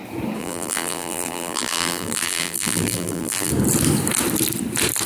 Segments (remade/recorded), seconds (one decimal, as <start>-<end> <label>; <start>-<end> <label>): 0.0-0.4 recorded; 0.4-3.5 remade; 3.5-5.1 recorded